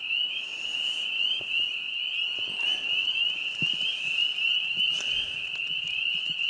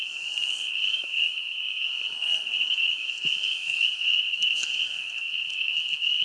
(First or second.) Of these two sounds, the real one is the first